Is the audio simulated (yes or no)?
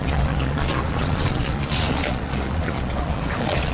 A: yes